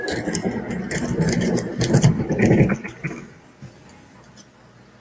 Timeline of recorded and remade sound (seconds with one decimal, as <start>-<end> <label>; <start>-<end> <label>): 0.0-0.4 recorded; 0.4-3.1 remade; 3.1-5.0 recorded